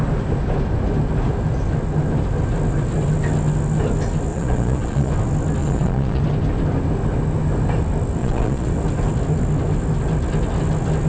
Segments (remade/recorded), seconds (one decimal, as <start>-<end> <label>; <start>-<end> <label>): 0.0-4.3 recorded; 4.3-5.1 remade; 5.1-5.6 recorded; 5.6-6.2 remade; 6.2-8.2 recorded; 8.2-8.7 remade; 8.7-11.1 recorded